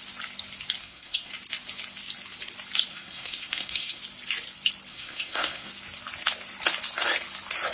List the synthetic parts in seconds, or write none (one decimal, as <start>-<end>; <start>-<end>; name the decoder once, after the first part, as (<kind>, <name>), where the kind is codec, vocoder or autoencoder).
0.8-1.3 (codec, SNAC); 2.9-4.0; 4.9-5.7